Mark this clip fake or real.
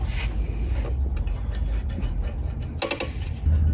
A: real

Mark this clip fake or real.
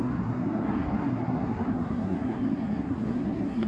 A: fake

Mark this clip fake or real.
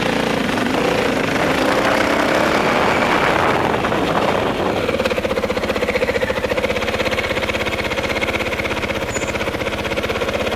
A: real